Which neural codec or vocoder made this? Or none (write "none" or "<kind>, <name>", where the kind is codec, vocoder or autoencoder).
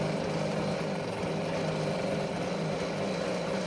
none